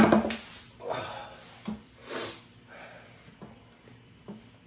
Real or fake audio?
real